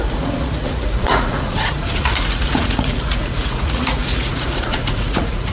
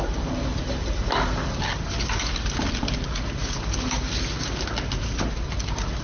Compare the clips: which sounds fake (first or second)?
first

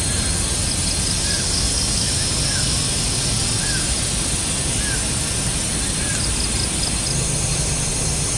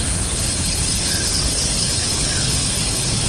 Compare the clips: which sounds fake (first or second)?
second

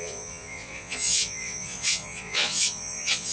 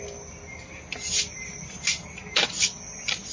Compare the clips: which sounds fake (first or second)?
first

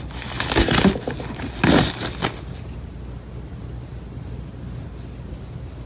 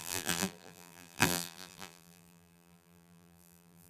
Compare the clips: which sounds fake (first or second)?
second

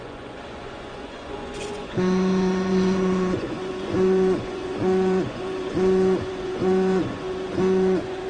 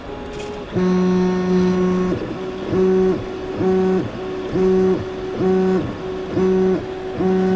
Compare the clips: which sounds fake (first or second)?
first